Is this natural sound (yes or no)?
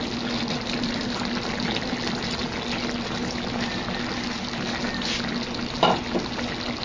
yes